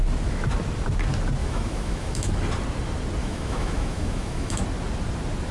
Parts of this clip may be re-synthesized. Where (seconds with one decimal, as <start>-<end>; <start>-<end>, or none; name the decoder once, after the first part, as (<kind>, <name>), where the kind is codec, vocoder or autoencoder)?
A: 1.4-2.3 (autoencoder, DAC-VAE); 3.2-4.6